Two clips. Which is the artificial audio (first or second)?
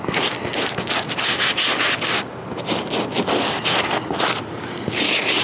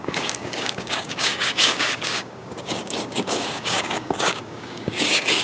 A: second